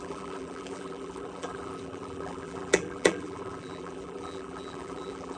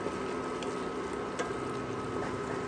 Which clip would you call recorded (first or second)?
second